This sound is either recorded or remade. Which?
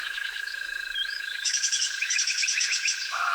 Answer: remade